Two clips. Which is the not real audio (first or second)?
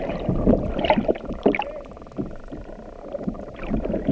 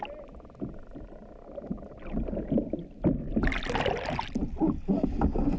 first